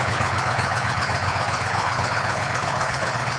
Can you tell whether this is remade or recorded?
remade